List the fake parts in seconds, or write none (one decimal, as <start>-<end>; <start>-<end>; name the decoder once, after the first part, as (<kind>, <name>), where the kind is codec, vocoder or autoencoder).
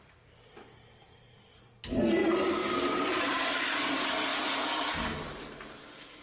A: 2.6-3.8 (vocoder, BigVGAN v2)